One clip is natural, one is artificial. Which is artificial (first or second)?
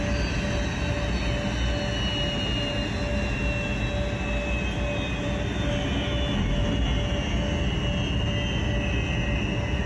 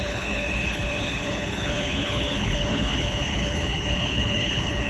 second